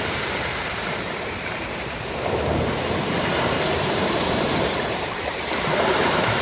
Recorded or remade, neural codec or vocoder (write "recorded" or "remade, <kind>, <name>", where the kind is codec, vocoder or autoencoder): remade, vocoder, BigVGAN v2